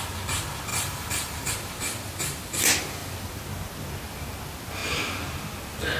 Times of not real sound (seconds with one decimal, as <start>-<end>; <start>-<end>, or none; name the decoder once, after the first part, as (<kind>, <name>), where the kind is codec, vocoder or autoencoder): 0.7-1.5 (vocoder, BigVGAN v2)

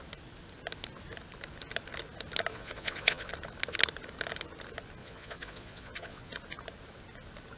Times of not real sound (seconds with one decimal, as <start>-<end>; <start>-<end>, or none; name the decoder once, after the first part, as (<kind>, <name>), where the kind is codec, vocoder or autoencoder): 2.5-3.3 (vocoder, Vocos); 5.0-6.3

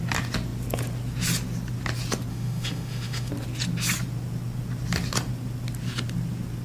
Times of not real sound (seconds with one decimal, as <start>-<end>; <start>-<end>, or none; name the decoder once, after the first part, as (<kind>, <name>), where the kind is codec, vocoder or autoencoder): 2.3-3.3 (autoencoder, DAC-VAE)

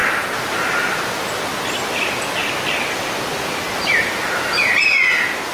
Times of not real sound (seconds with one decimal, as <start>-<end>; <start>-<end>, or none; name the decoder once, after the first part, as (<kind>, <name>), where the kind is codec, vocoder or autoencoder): 0.0-0.8 (vocoder, BigVGAN v2); 2.4-4.3

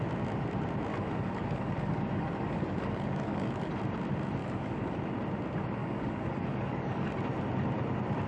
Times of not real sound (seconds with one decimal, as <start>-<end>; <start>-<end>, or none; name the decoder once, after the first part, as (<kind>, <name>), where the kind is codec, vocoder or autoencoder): 0.9-3.7 (codec, DAC); 4.4-5.1; 5.8-7.1

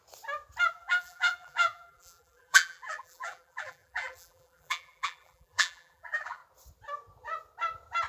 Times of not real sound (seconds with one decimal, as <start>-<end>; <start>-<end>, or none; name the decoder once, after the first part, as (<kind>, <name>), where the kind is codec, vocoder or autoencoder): 0.7-6.4 (vocoder, BigVGAN v2)